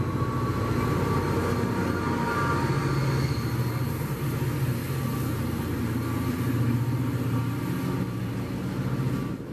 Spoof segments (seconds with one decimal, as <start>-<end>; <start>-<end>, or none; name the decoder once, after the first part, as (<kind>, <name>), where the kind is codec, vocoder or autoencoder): none